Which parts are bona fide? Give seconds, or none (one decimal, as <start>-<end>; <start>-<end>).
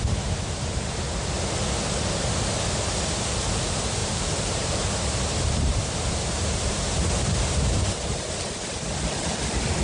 0.0-4.0; 8.2-9.8